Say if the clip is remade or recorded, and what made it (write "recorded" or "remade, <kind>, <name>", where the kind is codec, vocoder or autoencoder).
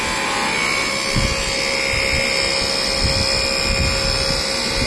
recorded